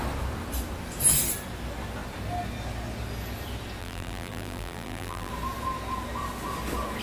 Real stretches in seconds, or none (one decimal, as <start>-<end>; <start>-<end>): 0.0-3.8; 5.3-7.0